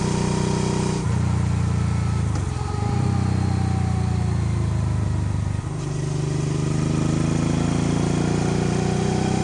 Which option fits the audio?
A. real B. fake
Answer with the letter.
A